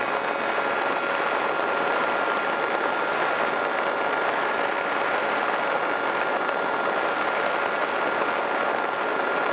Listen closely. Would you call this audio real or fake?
real